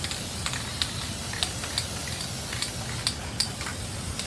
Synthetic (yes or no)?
no